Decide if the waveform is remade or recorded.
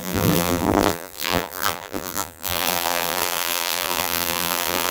remade